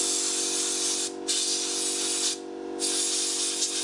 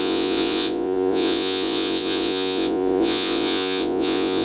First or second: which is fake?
second